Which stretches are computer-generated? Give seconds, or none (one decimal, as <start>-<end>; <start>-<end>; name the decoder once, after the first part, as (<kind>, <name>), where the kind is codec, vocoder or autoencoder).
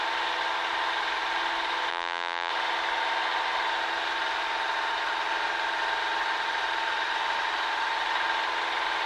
1.9-2.5 (vocoder, BigVGAN v2)